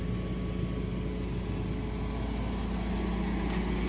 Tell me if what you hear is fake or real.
real